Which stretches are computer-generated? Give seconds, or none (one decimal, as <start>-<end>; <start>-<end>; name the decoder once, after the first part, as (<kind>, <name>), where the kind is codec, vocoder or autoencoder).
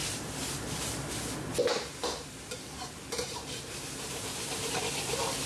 0.0-1.2 (vocoder, BigVGAN v2); 2.0-4.8